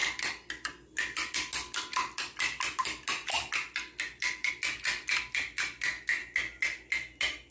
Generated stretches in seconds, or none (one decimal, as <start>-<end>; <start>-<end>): none

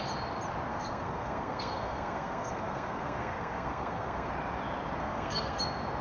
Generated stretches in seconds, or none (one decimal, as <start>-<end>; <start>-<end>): 0.7-4.3; 5.0-5.6

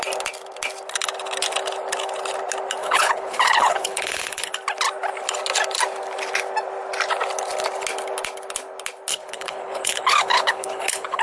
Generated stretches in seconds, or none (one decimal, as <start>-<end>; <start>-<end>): 2.8-4.5; 9.1-11.2

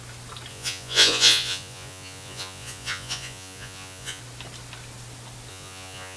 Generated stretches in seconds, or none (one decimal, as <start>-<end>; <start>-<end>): 0.5-4.2; 5.5-6.2